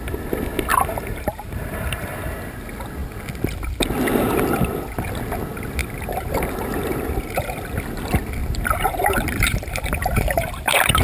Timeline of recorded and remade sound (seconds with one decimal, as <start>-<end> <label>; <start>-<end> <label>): 0.0-0.7 recorded; 0.7-2.2 remade; 2.2-5.8 recorded; 5.8-7.4 remade; 7.4-8.4 recorded; 8.4-11.0 remade